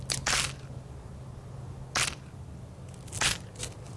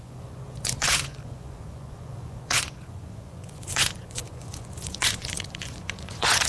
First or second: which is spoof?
second